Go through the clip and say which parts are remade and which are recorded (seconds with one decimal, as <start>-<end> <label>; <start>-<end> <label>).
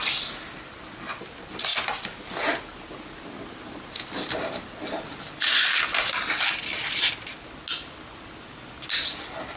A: 0.0-9.6 recorded